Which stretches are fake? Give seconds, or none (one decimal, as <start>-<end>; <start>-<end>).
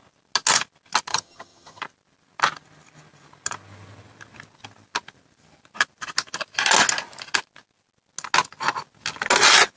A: 1.1-1.8